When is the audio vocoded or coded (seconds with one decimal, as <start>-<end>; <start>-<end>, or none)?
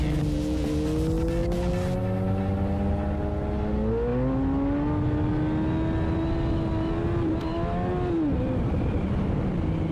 none